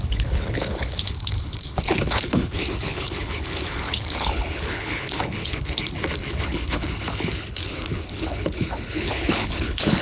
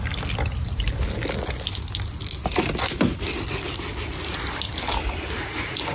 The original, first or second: second